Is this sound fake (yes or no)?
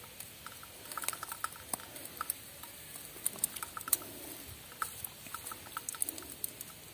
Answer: no